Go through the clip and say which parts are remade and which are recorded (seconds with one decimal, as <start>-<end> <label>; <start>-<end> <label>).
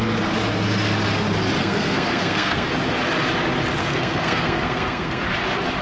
0.0-1.6 recorded; 1.6-2.7 remade; 2.7-3.8 recorded; 3.8-5.2 remade; 5.2-5.8 recorded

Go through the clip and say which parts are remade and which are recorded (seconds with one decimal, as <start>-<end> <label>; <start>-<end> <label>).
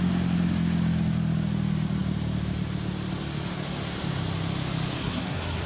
0.0-5.0 recorded; 5.0-5.7 remade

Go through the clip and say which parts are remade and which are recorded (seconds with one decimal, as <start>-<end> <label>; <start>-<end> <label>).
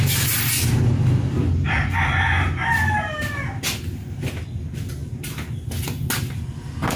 0.0-7.0 recorded